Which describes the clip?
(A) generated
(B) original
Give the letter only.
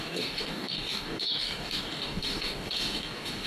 A